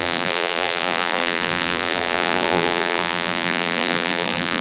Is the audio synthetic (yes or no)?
yes